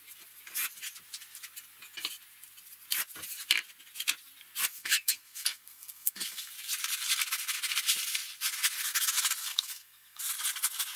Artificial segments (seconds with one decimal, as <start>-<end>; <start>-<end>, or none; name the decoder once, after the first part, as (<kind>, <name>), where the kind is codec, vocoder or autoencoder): 4.7-6.5 (codec, SNAC); 9.4-10.2